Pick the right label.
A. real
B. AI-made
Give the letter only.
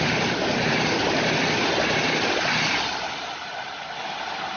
A